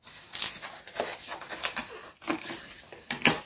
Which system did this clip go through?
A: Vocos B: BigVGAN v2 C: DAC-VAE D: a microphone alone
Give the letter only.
D